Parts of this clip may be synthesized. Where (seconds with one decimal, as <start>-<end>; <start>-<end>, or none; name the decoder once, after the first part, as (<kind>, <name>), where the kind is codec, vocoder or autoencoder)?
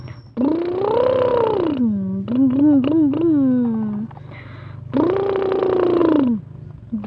none